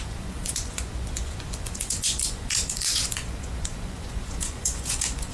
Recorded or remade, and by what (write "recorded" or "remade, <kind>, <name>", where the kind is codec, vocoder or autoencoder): remade, vocoder, Vocos